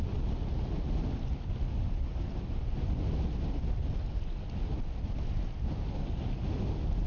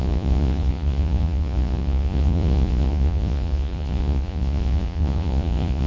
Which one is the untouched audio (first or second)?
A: first